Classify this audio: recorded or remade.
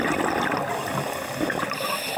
recorded